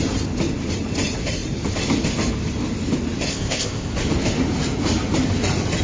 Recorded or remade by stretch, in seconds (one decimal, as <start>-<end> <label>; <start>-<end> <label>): 0.0-3.3 recorded; 3.3-3.9 remade; 3.9-5.8 recorded